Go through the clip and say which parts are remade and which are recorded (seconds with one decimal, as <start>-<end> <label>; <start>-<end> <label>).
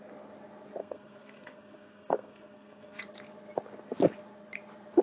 0.0-0.8 recorded; 0.8-3.0 remade; 3.0-5.0 recorded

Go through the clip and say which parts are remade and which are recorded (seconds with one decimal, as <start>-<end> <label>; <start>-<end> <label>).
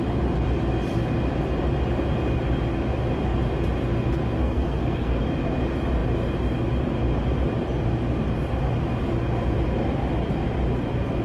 0.0-4.4 recorded; 4.4-5.2 remade; 5.2-11.2 recorded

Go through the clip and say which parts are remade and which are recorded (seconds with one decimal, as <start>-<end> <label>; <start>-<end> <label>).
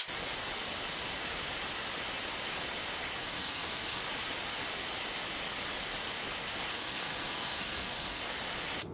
0.0-3.2 recorded; 3.2-4.0 remade; 4.0-6.7 recorded; 6.7-8.2 remade; 8.2-8.9 recorded